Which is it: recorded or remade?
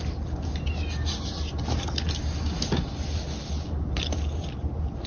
recorded